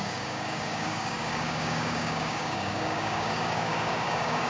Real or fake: fake